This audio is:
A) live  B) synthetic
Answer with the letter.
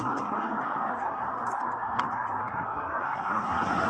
B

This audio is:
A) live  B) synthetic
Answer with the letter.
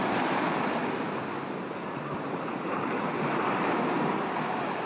A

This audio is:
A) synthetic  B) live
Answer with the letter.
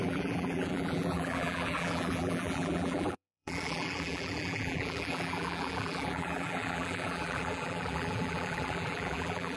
A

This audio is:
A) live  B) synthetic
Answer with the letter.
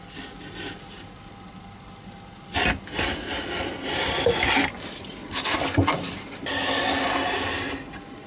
A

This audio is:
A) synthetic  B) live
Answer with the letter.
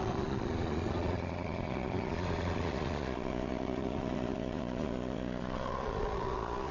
A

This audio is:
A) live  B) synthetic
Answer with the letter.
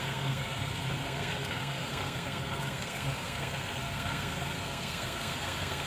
B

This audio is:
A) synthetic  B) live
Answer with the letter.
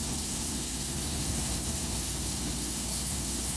A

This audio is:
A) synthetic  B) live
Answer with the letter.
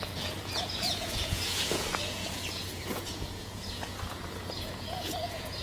A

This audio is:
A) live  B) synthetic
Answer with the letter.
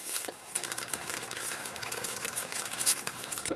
B